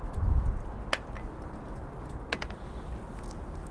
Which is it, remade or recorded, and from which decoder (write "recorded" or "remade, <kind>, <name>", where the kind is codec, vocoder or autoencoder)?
recorded